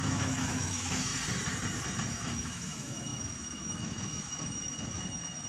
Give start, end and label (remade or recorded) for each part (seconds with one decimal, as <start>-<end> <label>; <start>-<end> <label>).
0.0-1.1 remade; 1.1-2.1 recorded; 2.1-5.5 remade